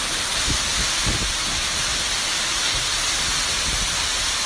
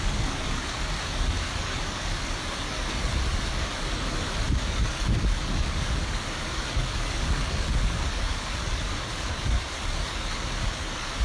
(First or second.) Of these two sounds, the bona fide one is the first